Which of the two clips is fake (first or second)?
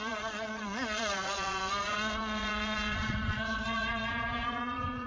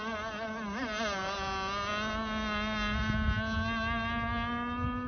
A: first